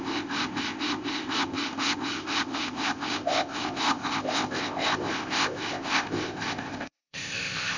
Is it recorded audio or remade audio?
remade